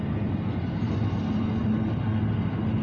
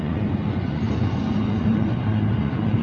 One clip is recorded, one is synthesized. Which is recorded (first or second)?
first